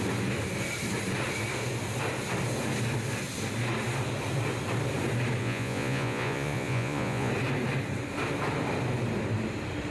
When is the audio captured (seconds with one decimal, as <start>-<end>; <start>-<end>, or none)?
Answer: 0.0-5.4; 7.3-9.9